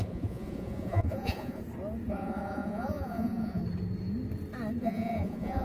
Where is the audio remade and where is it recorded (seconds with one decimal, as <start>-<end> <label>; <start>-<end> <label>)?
0.0-1.6 remade; 1.6-2.1 recorded; 2.1-3.6 remade; 3.6-4.8 recorded; 4.8-5.6 remade